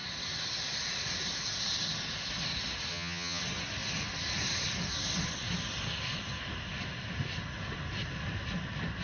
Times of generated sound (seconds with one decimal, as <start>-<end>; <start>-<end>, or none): 2.9-3.4